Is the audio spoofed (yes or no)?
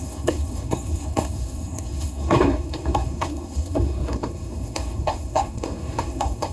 yes